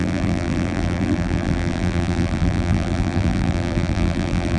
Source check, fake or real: fake